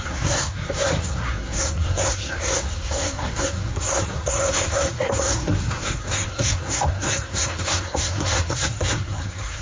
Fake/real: fake